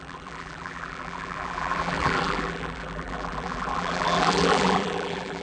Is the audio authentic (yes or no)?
no